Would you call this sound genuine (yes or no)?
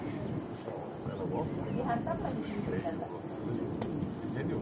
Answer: yes